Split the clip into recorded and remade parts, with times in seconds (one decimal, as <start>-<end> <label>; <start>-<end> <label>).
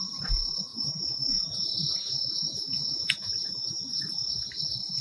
0.0-0.7 recorded; 0.7-3.7 remade; 3.7-5.0 recorded